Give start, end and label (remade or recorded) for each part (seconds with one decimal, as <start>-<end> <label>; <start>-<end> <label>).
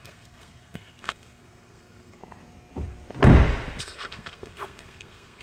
0.0-2.2 remade; 2.2-3.8 recorded; 3.8-5.4 remade